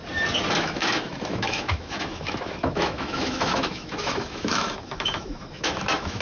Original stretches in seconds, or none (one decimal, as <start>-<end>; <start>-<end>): 0.0-0.6